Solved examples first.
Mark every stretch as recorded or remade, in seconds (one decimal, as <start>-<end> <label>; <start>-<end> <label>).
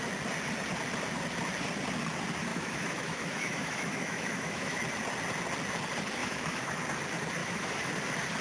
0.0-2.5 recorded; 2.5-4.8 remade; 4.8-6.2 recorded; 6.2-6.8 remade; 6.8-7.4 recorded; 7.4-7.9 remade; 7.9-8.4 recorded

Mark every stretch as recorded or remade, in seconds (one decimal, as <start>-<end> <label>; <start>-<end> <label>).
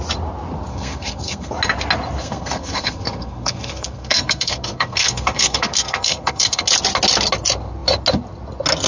0.0-0.7 recorded; 0.7-1.5 remade; 1.5-2.2 recorded; 2.2-6.6 remade; 6.6-8.9 recorded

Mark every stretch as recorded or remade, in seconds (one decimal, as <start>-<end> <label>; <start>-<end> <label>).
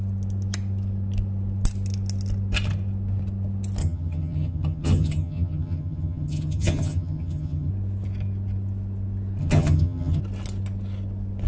0.0-3.8 recorded; 3.8-7.7 remade; 7.7-9.4 recorded; 9.4-10.2 remade; 10.2-11.5 recorded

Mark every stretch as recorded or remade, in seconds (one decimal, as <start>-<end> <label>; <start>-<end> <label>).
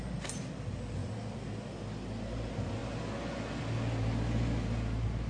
0.0-5.3 recorded